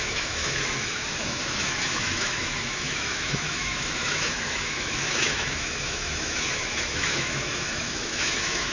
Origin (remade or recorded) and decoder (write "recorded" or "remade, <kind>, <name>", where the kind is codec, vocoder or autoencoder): remade, autoencoder, DAC-VAE